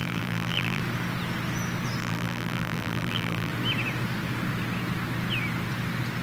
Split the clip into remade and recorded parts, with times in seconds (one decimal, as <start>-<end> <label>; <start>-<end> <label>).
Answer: 0.0-0.8 remade; 0.8-2.0 recorded; 2.0-3.5 remade; 3.5-6.2 recorded